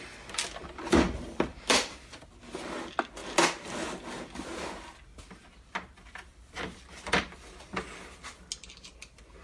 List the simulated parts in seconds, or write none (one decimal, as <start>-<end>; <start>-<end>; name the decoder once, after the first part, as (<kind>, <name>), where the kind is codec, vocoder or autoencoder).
0.6-1.9 (vocoder, BigVGAN v2); 6.3-7.6